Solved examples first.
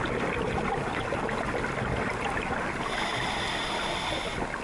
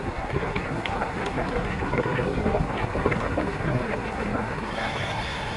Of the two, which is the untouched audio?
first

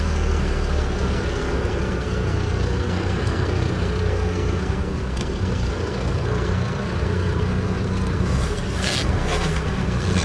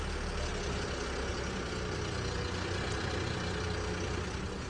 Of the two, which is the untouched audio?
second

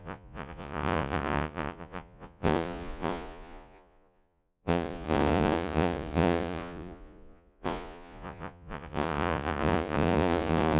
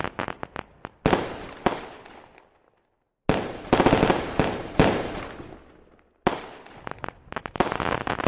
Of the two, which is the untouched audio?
second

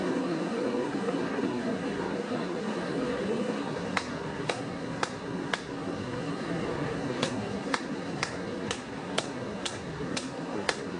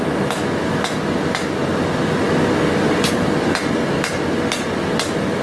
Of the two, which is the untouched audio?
second